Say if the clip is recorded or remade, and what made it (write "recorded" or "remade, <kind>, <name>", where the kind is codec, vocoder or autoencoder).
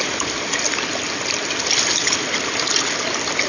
recorded